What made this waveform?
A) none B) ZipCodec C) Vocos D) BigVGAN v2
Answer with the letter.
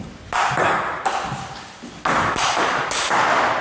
A